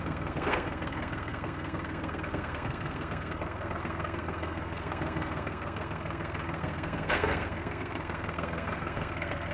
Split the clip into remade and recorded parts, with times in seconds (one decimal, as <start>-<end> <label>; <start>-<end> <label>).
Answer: 0.0-9.5 remade